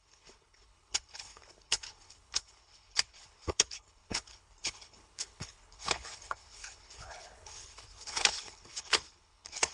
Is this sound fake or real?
fake